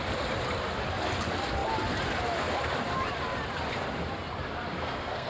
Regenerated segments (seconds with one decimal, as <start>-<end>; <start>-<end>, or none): 4.8-5.3